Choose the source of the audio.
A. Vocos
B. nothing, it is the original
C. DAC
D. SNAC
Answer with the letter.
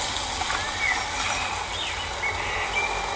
B